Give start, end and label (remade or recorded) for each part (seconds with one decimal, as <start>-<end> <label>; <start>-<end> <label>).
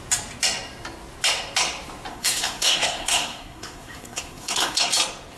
0.0-2.1 recorded; 2.1-4.9 remade; 4.9-5.4 recorded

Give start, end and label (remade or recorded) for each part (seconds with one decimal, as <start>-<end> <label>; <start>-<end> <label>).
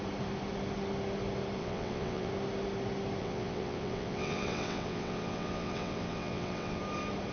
0.0-1.6 recorded; 1.6-2.3 remade; 2.3-3.2 recorded; 3.2-6.8 remade; 6.8-7.3 recorded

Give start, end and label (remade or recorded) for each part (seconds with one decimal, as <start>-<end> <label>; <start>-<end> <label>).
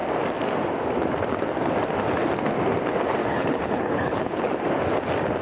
0.0-3.2 recorded; 3.2-4.5 remade; 4.5-5.4 recorded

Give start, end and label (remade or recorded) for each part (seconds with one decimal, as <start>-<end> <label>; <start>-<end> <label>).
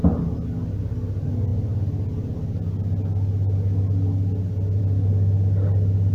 0.0-6.1 recorded